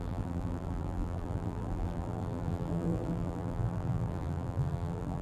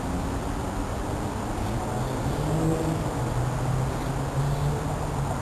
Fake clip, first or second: first